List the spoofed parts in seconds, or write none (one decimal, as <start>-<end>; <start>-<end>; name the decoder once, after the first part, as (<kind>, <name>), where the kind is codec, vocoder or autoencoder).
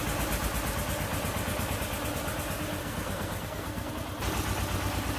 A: 2.8-3.9 (codec, SNAC)